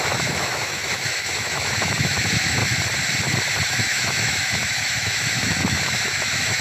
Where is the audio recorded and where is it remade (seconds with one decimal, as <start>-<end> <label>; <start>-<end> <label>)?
0.0-2.6 remade; 2.6-3.7 recorded; 3.7-6.6 remade